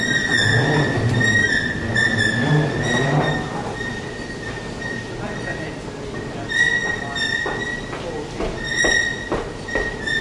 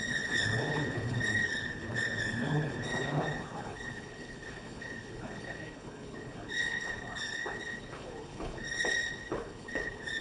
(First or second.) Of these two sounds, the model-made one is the second